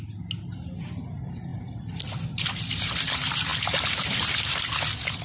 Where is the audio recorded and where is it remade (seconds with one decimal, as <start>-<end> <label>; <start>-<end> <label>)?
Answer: 0.0-5.2 recorded